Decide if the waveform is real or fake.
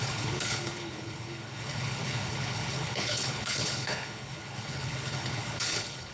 fake